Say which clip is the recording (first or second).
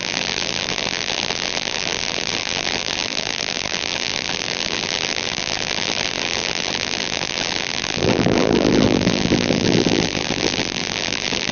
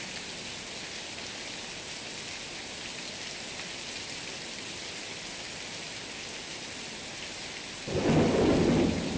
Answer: second